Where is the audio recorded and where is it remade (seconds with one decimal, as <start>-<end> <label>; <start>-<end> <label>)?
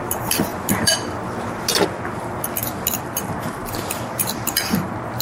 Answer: 0.0-0.5 recorded; 0.5-1.6 remade; 1.6-3.6 recorded; 3.6-4.8 remade; 4.8-5.2 recorded